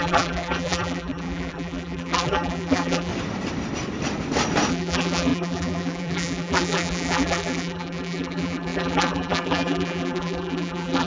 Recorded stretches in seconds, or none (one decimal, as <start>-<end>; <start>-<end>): 3.1-4.7